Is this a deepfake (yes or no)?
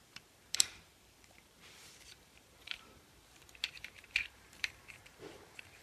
yes